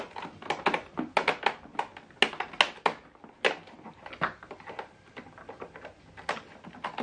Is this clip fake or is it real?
real